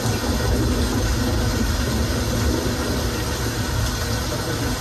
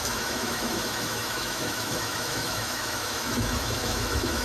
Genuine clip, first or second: first